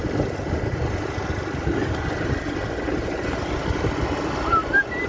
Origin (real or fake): real